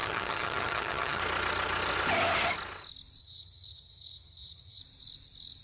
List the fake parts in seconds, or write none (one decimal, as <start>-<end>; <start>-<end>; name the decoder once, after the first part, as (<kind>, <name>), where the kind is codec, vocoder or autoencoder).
0.0-1.2 (vocoder, HiFi-GAN); 3.2-4.8